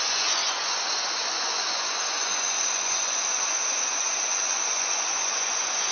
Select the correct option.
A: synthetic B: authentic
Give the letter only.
A